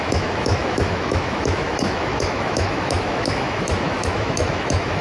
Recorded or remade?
remade